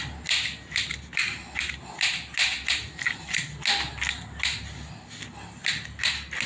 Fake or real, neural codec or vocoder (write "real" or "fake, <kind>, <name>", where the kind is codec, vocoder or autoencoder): real